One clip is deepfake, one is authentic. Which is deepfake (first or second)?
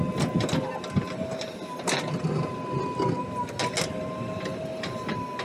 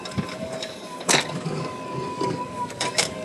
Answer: second